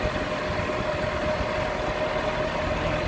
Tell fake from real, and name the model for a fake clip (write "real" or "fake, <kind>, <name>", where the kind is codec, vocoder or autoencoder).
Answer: real